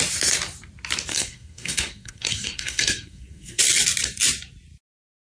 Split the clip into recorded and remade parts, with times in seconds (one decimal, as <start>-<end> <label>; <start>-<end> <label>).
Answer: 0.0-1.1 recorded; 1.1-3.6 remade; 3.6-5.3 recorded